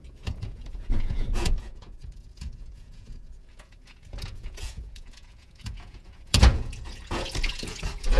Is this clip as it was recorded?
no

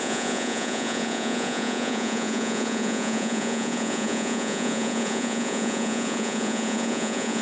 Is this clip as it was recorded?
no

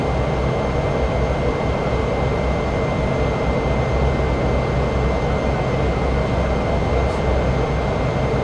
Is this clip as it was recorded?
yes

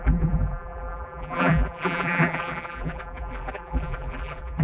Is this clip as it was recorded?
no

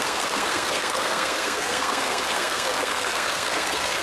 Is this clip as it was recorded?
no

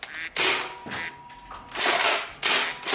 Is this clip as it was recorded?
yes